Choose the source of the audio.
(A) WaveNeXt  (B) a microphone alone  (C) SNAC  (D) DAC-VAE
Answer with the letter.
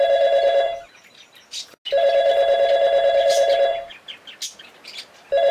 B